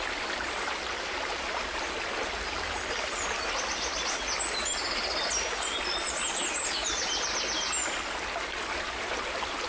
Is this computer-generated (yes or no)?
no